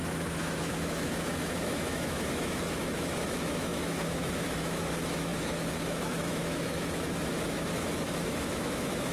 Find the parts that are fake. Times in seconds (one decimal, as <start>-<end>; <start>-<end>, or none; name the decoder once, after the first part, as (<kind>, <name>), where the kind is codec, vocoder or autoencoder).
0.0-9.1 (autoencoder, DAC-VAE)

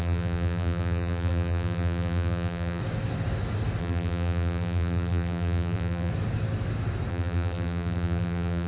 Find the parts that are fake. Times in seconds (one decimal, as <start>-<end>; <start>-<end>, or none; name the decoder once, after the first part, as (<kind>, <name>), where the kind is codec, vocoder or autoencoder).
0.0-2.8 (vocoder, BigVGAN v2); 3.8-6.1; 7.1-8.7

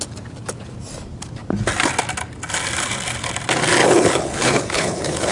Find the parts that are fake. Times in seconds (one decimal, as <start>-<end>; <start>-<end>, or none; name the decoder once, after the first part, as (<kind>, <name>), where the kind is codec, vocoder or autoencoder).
3.8-5.3 (codec, HILCodec)

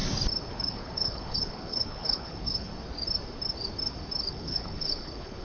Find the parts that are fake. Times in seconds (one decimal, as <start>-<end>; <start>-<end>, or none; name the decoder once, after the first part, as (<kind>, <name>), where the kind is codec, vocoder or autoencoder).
0.5-2.7 (codec, HILCodec); 4.3-5.4

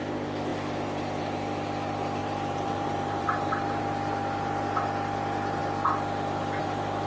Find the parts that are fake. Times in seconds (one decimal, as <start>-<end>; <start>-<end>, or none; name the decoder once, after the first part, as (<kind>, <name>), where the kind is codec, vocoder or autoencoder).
2.2-3.8 (vocoder, BigVGAN v2)